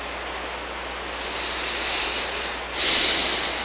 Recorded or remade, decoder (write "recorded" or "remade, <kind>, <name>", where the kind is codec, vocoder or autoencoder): recorded